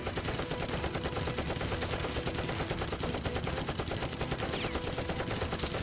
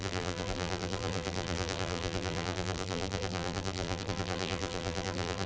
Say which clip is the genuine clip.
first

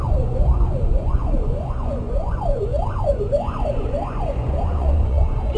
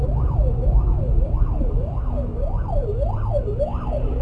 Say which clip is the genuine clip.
second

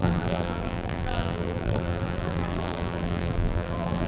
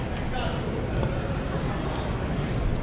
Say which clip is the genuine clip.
second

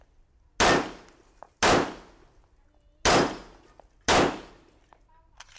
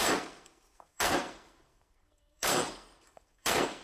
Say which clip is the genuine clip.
first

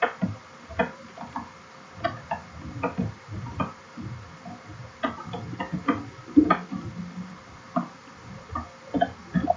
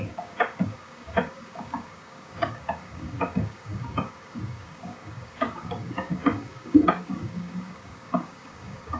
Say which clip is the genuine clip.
first